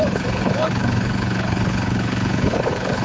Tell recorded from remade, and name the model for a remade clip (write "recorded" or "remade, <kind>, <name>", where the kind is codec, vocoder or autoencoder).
remade, codec, HILCodec